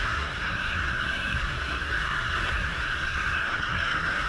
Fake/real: fake